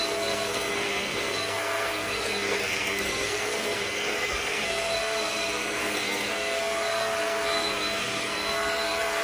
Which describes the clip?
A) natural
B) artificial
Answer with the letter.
B